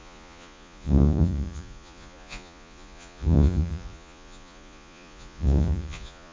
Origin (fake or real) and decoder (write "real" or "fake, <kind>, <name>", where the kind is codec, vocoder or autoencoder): fake, vocoder, Vocos